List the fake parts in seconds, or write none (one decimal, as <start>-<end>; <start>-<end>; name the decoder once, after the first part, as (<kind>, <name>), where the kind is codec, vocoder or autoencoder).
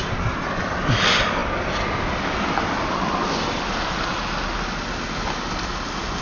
none